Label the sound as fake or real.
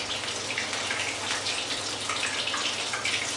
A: real